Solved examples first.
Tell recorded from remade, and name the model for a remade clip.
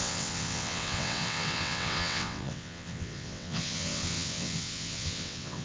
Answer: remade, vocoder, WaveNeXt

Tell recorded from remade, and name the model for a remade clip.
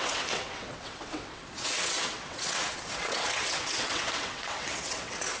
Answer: remade, vocoder, WaveNeXt